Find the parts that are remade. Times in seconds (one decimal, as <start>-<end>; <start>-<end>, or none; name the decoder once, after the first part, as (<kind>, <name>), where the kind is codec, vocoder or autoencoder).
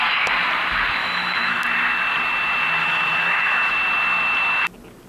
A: 1.0-1.6 (autoencoder, DAC-VAE); 2.8-3.7